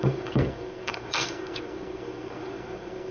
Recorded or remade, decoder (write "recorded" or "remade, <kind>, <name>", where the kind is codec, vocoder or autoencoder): remade, codec, SNAC